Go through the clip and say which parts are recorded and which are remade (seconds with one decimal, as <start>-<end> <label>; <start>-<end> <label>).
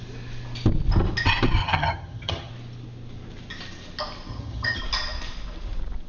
0.0-1.6 recorded; 1.6-2.5 remade; 2.5-4.3 recorded; 4.3-4.8 remade; 4.8-6.1 recorded